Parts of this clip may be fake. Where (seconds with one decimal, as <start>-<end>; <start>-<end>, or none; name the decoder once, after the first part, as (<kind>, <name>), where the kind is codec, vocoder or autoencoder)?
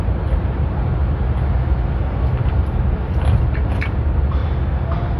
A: 0.0-1.0 (vocoder, BigVGAN v2); 2.3-4.4